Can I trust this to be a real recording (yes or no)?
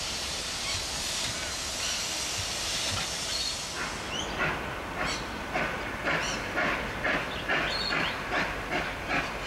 yes